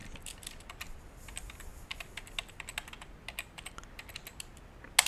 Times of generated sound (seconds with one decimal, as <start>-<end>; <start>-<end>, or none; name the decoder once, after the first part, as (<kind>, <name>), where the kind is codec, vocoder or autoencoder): none